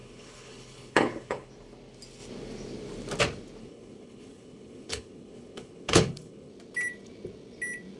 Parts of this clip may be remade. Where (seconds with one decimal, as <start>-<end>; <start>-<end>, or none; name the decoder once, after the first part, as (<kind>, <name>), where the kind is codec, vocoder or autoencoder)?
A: 0.0-1.5 (codec, HILCodec); 3.6-6.5